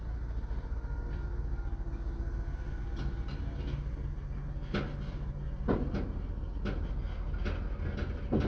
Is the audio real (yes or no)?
yes